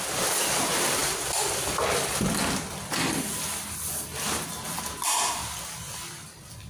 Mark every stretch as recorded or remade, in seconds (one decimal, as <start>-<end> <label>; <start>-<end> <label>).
0.0-1.0 recorded; 1.0-1.8 remade; 1.8-6.7 recorded